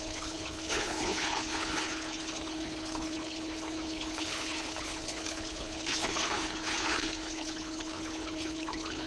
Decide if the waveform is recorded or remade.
remade